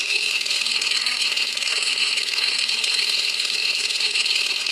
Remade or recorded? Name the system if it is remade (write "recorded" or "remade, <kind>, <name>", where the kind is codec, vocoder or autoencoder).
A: remade, codec, SNAC